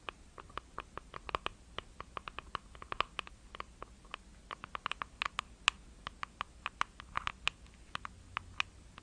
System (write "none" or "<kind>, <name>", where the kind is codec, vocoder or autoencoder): none